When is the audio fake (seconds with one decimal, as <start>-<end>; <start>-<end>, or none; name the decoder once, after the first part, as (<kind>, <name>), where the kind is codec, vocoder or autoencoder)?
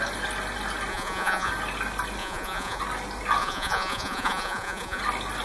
0.9-1.5 (vocoder, Vocos); 2.2-2.8; 3.4-5.0